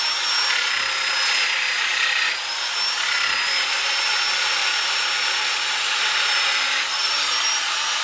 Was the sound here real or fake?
real